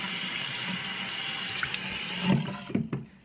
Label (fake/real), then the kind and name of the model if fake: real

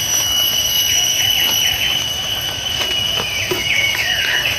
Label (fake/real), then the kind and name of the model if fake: fake, autoencoder, DAC-VAE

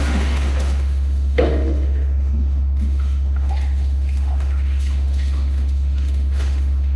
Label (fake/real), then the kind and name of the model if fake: fake, autoencoder, DAC-VAE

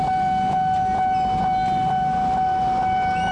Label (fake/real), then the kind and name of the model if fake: real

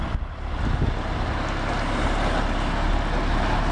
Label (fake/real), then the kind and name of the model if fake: real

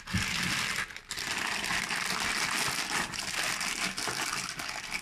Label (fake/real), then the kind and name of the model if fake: real